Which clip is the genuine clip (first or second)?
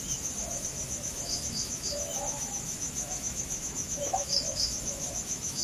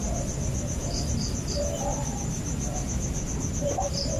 second